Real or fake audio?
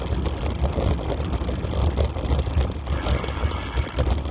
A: real